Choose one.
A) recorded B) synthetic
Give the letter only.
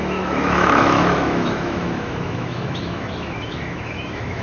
B